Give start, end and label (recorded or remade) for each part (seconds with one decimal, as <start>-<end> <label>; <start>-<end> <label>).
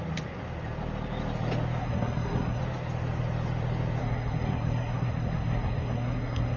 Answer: 0.0-1.8 recorded; 1.8-2.6 remade; 2.6-4.0 recorded; 4.0-6.6 remade